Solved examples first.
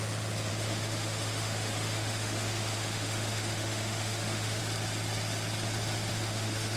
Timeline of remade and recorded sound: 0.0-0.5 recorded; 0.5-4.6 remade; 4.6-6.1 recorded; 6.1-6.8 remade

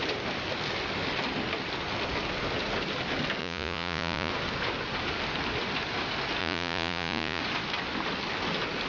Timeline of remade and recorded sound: 0.0-3.4 recorded; 3.4-4.3 remade; 4.3-6.4 recorded; 6.4-7.4 remade; 7.4-8.9 recorded

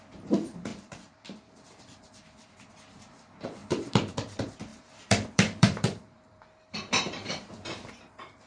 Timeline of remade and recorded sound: 0.0-0.7 recorded; 0.7-2.7 remade; 2.7-3.6 recorded; 3.6-4.1 remade; 4.1-4.7 recorded; 4.7-7.5 remade; 7.5-8.5 recorded

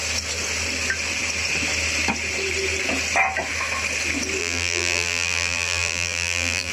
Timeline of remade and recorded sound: 0.0-4.4 recorded; 4.4-6.7 remade